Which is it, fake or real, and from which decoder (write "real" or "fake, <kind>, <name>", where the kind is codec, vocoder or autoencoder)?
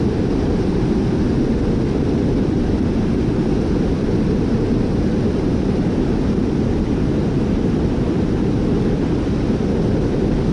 real